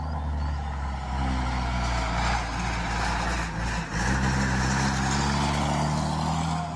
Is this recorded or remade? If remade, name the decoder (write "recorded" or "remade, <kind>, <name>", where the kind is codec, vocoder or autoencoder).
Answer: recorded